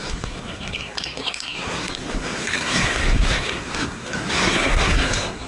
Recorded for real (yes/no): no